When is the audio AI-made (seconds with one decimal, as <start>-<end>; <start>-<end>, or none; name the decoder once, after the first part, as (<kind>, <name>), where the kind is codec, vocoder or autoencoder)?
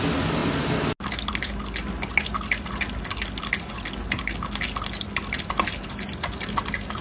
none